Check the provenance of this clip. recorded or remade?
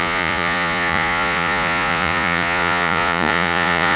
remade